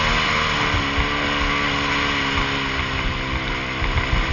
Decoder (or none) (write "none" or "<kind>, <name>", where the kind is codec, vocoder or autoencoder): none